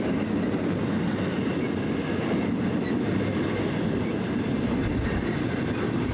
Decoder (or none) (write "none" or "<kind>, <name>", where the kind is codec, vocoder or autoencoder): none